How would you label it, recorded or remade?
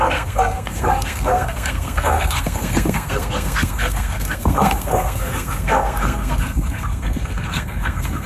remade